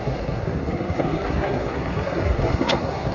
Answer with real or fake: fake